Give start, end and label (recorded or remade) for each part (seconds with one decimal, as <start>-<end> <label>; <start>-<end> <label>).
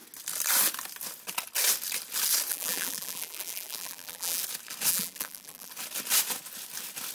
0.0-2.5 recorded; 2.5-4.4 remade; 4.4-4.9 recorded; 4.9-5.7 remade; 5.7-7.1 recorded